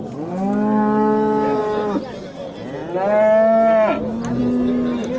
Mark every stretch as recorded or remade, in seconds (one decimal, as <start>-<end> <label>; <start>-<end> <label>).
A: 0.0-5.2 recorded